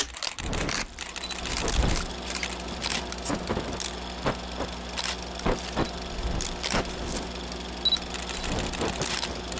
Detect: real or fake real